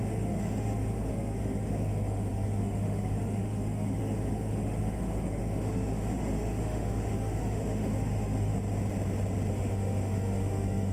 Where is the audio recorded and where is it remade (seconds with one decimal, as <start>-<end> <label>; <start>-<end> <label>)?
0.0-8.5 remade; 8.5-9.5 recorded; 9.5-10.9 remade